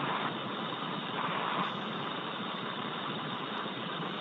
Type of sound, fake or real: fake